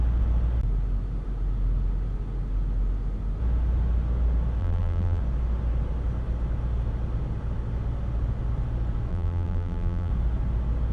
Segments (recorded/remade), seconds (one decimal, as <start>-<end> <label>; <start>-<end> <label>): 0.0-4.6 recorded; 4.6-5.2 remade; 5.2-9.1 recorded; 9.1-10.1 remade; 10.1-10.9 recorded